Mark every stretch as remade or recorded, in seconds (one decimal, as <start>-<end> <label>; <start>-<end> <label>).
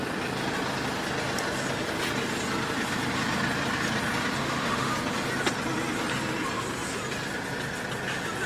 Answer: 0.0-4.4 recorded; 4.4-4.9 remade; 4.9-8.5 recorded